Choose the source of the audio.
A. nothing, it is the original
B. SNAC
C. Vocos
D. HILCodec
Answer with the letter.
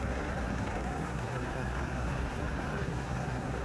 B